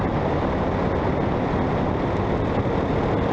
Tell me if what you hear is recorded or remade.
recorded